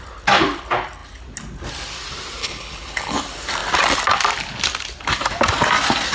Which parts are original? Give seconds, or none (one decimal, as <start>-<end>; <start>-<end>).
0.0-2.4; 3.2-6.1